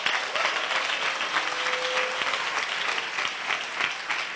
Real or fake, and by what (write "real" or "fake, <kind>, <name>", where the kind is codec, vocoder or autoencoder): real